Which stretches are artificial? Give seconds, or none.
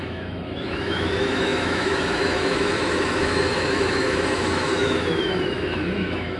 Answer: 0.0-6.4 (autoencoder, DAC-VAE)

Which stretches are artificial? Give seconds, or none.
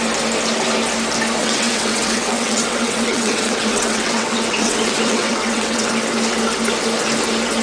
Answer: 1.4-5.9 (vocoder, WaveNeXt)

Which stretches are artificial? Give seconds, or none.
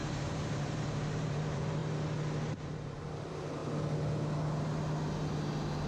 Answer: 0.5-1.8 (vocoder, BigVGAN v2); 2.6-3.6